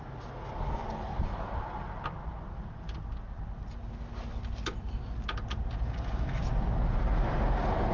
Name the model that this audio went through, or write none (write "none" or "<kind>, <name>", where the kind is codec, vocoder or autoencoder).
none